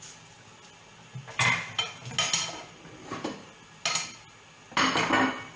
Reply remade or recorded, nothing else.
recorded